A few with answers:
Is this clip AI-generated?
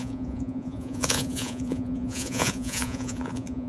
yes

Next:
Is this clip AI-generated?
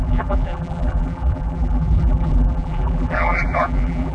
yes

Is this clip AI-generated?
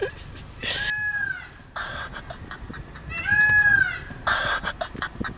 no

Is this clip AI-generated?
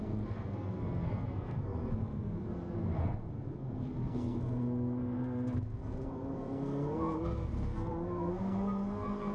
yes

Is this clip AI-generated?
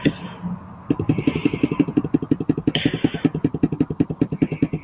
no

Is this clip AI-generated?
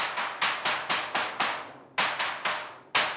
no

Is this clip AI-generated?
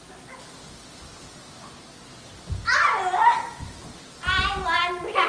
no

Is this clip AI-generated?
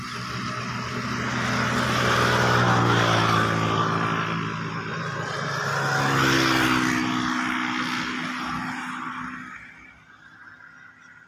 no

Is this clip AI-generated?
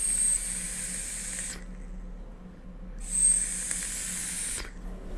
no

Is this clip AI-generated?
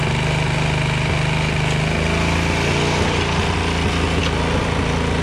no